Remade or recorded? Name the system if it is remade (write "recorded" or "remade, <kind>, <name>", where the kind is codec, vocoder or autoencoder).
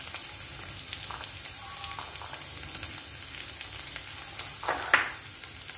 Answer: recorded